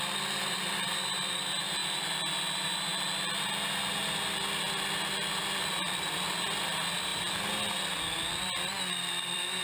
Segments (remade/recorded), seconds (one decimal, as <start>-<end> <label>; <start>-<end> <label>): 0.0-2.9 remade; 2.9-5.4 recorded; 5.4-7.1 remade; 7.1-9.1 recorded; 9.1-9.6 remade